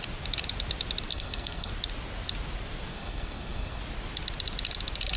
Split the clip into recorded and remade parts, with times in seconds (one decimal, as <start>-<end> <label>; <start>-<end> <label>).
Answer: 0.0-1.1 recorded; 1.1-1.7 remade; 1.7-2.9 recorded; 2.9-3.8 remade; 3.8-5.2 recorded